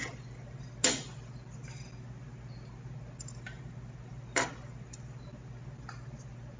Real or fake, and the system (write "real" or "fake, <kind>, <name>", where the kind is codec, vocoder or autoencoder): real